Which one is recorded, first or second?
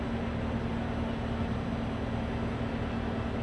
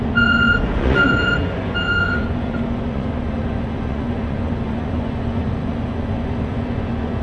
first